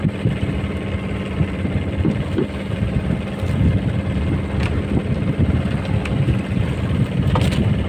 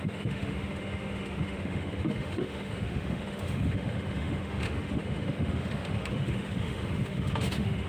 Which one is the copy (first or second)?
second